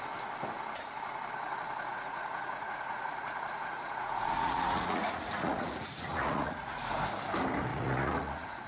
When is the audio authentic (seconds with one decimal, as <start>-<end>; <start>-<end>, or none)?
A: 0.0-1.9; 6.8-7.7